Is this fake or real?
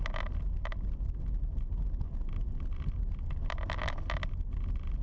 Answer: real